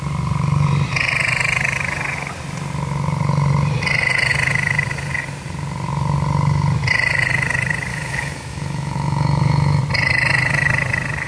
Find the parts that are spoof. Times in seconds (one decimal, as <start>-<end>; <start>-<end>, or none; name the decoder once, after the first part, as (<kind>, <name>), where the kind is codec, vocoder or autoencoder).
7.9-9.8 (autoencoder, DAC-VAE)